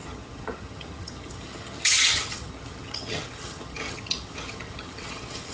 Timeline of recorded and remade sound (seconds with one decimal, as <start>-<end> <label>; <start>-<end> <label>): 0.0-5.5 remade